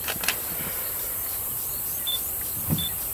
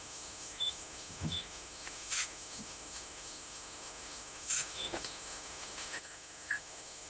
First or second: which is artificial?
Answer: second